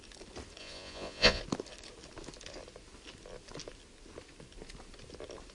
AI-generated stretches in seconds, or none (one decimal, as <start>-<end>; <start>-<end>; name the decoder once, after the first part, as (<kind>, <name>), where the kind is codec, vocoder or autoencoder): 0.6-1.4 (vocoder, Vocos)